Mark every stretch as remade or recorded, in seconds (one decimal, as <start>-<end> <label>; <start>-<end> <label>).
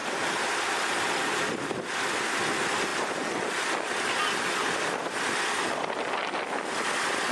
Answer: 0.0-7.3 recorded